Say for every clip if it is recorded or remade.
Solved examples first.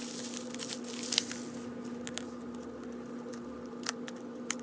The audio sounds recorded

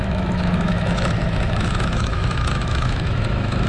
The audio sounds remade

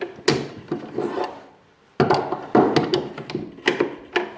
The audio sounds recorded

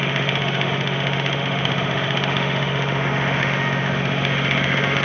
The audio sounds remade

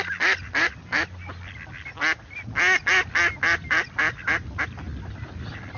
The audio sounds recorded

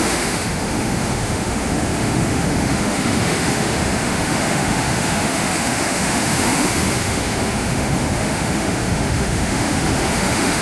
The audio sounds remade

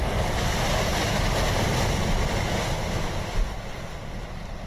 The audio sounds recorded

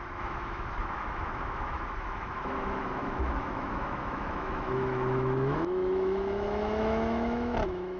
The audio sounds remade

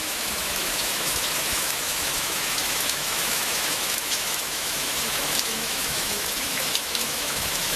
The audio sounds remade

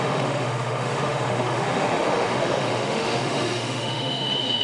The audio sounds remade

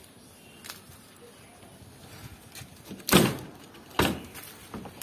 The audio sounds recorded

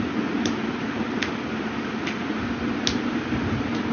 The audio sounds recorded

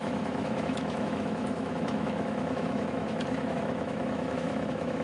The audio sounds remade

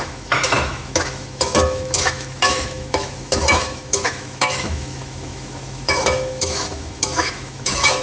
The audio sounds remade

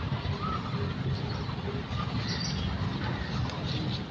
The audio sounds recorded